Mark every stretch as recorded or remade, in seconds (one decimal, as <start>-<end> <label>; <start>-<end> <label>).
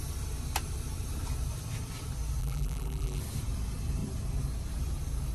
0.0-2.4 recorded; 2.4-3.2 remade; 3.2-5.3 recorded